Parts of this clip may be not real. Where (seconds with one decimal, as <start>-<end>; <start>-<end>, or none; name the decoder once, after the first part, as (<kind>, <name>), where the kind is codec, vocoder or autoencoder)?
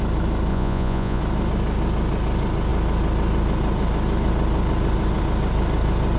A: 0.5-1.2 (vocoder, Vocos)